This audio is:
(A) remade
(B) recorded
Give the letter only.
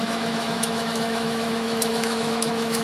A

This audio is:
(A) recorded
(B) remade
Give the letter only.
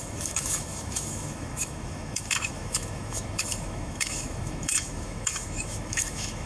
B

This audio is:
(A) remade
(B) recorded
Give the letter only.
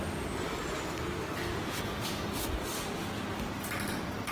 B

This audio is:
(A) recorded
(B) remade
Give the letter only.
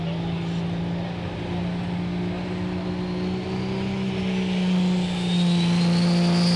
A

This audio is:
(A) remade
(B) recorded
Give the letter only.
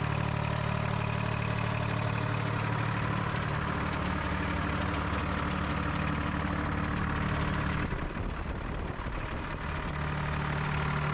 B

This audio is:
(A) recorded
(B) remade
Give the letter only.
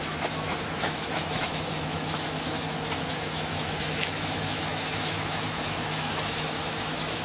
B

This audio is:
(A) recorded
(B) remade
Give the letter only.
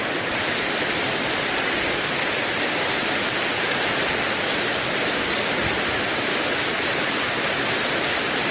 A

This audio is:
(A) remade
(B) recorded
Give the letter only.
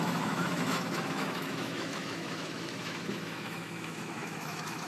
A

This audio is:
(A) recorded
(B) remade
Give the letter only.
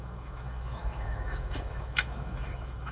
B